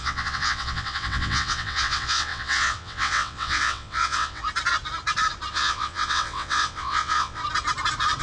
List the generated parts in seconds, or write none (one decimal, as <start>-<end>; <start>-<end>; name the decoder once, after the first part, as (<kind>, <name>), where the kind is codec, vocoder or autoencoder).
0.0-4.4 (vocoder, WaveNeXt); 5.5-7.4